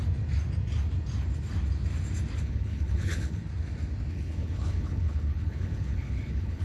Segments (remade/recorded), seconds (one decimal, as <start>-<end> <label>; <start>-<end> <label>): 0.0-2.4 recorded; 2.4-3.4 remade; 3.4-4.1 recorded; 4.1-6.6 remade